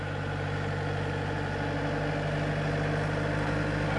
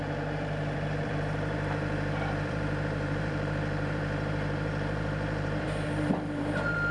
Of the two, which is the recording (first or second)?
first